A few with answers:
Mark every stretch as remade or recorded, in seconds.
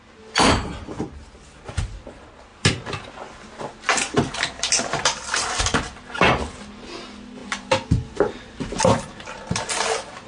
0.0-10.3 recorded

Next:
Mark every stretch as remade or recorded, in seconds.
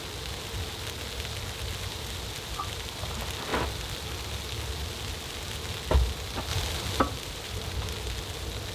0.0-8.7 recorded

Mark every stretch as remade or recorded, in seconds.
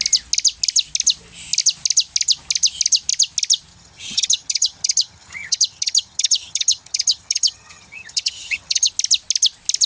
0.0-3.7 recorded; 3.7-8.9 remade; 8.9-9.9 recorded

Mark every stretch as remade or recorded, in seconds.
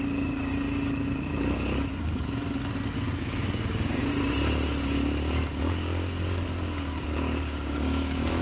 0.0-0.5 remade; 0.5-3.2 recorded; 3.2-4.1 remade; 4.1-5.7 recorded; 5.7-8.4 remade